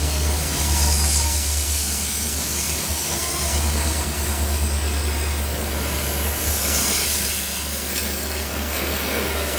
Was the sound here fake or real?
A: fake